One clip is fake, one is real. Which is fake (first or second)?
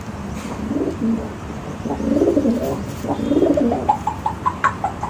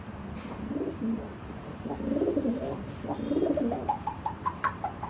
second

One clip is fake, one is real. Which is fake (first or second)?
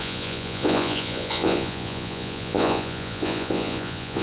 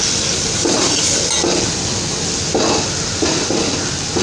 first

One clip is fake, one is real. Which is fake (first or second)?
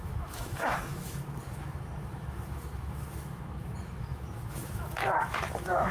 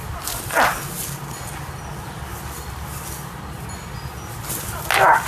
first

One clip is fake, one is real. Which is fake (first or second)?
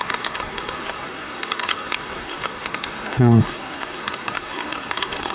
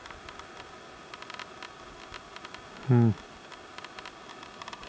first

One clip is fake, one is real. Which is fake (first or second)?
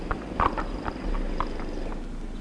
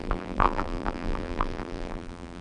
second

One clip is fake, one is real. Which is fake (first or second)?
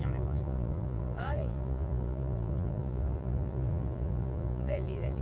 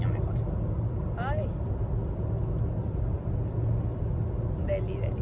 first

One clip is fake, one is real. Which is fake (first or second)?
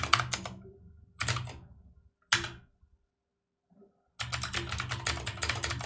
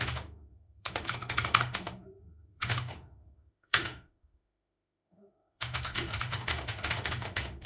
second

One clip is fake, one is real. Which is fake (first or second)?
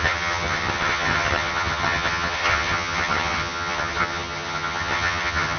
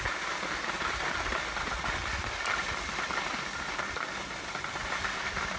first